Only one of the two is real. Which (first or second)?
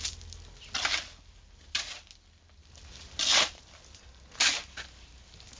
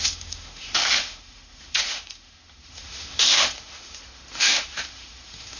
first